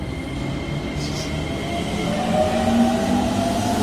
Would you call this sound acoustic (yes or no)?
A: yes